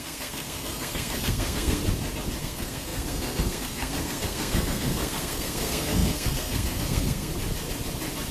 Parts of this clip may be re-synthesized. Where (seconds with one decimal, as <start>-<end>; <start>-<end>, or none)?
0.0-1.8; 2.4-7.3